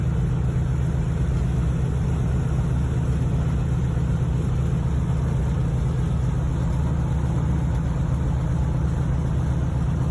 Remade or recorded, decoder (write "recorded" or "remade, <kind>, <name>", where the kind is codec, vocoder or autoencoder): recorded